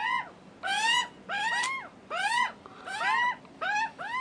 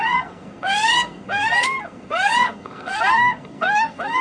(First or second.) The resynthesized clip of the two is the second